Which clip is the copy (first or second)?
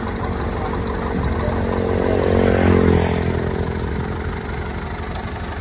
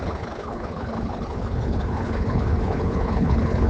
second